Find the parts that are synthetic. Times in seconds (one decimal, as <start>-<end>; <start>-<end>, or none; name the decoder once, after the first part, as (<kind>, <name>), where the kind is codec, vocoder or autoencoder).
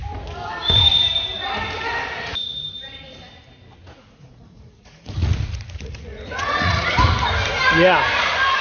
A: 3.8-6.9 (vocoder, Vocos)